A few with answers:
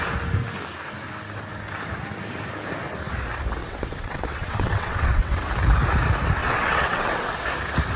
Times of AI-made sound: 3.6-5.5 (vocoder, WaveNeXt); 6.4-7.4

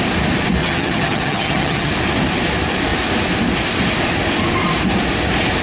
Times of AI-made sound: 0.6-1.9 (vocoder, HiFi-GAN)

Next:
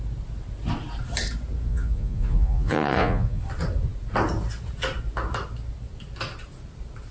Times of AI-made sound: 1.7-3.4 (vocoder, Vocos)

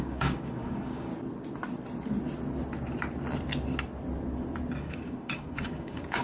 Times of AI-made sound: 0.0-1.1 (codec, DAC); 4.8-6.2

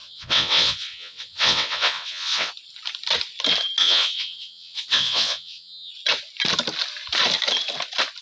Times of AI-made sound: 0.0-2.5 (vocoder, WaveNeXt); 3.8-5.9